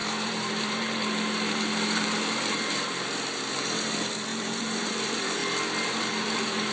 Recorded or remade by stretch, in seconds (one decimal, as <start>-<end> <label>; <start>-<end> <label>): 0.0-5.4 remade; 5.4-6.0 recorded; 6.0-6.7 remade